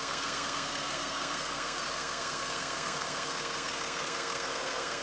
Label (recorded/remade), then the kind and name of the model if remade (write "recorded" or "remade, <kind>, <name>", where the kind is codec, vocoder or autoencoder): remade, codec, SNAC